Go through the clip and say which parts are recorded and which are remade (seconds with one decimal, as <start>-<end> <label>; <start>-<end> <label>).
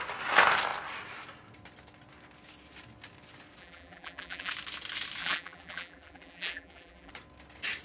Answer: 0.0-3.6 recorded; 3.6-4.5 remade; 4.5-5.2 recorded; 5.2-7.1 remade; 7.1-7.8 recorded